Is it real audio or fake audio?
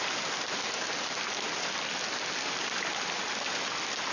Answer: real